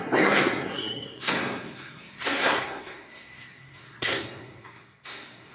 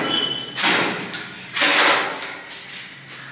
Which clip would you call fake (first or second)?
first